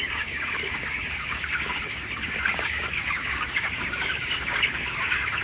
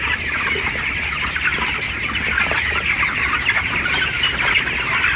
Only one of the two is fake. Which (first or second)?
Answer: first